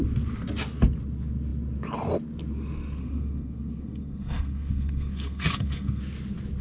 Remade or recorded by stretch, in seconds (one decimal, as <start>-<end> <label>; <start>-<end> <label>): 0.0-3.0 recorded; 3.0-6.0 remade; 6.0-6.6 recorded